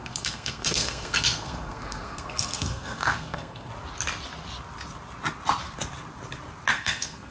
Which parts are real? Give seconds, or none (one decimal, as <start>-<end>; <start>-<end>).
3.7-6.7